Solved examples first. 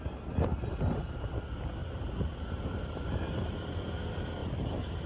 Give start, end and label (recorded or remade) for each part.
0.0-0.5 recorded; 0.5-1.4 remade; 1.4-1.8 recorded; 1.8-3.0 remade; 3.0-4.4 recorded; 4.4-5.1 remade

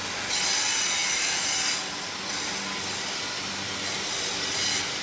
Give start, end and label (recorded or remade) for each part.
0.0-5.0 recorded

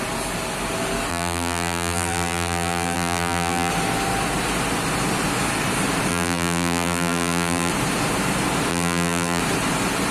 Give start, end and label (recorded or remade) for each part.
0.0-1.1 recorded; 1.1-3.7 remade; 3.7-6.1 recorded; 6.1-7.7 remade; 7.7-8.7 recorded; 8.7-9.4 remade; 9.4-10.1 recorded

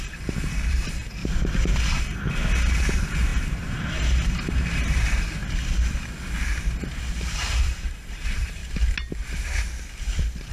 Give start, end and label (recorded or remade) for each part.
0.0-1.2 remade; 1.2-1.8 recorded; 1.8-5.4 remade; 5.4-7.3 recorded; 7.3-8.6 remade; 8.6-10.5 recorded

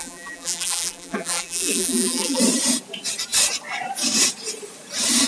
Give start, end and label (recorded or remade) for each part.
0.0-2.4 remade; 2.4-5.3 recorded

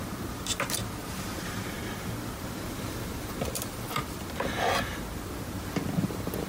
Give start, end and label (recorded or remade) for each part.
0.0-1.0 recorded; 1.0-2.1 remade; 2.1-6.5 recorded